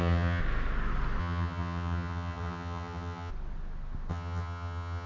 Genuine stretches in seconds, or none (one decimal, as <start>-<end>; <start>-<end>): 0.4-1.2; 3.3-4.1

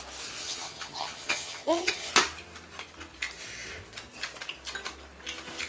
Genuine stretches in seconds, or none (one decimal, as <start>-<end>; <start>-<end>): 0.0-0.4; 2.1-5.7

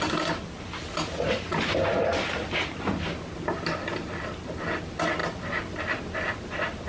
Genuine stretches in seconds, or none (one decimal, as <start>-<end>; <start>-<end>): 0.0-6.9